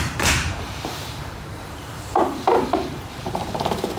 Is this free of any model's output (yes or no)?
no